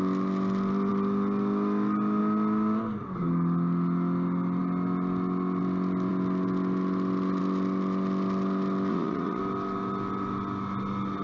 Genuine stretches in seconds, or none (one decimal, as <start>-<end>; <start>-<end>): 0.0-8.9; 9.4-11.2

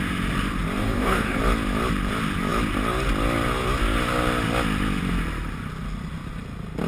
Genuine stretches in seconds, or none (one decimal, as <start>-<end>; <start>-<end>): 0.0-0.8; 1.4-6.9

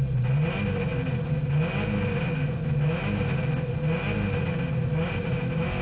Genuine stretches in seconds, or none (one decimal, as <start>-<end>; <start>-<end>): 0.0-5.8

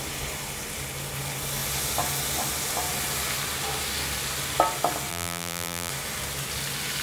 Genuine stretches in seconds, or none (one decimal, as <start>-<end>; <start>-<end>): 0.0-5.1; 5.9-7.0